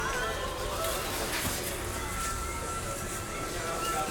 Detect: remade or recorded recorded